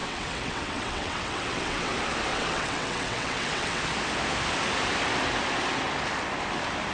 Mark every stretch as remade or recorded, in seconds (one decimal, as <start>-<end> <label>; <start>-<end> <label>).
0.0-1.9 remade; 1.9-2.3 recorded; 2.3-3.8 remade; 3.8-6.9 recorded